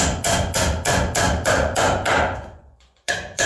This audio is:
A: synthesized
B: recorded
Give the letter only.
A